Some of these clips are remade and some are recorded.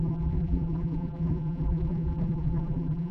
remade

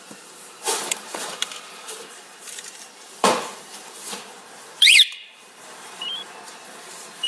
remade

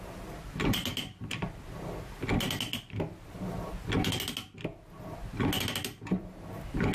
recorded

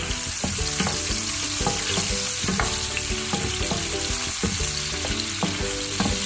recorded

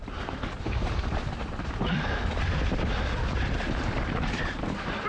remade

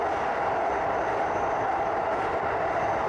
recorded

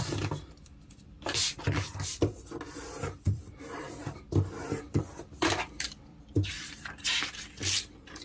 remade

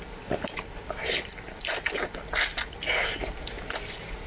recorded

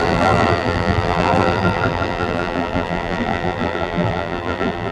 remade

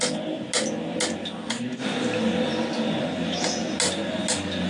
recorded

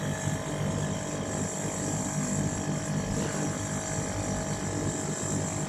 recorded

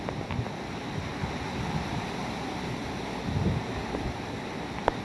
recorded